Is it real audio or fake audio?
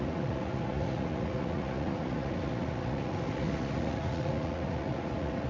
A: fake